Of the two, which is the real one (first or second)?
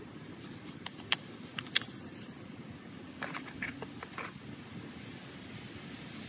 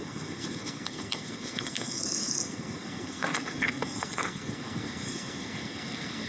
first